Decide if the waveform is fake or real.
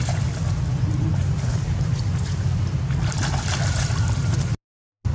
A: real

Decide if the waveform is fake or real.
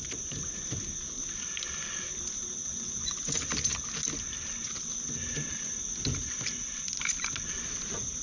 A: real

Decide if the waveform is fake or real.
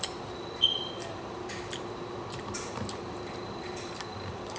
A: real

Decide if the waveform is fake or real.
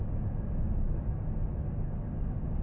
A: real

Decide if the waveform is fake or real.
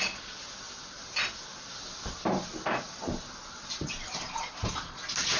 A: real